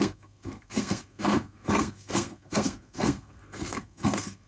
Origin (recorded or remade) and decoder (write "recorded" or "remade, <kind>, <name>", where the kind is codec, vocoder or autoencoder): remade, codec, SNAC